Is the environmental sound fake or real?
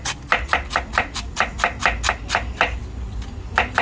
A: real